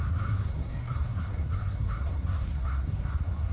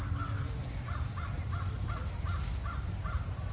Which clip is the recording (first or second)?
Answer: second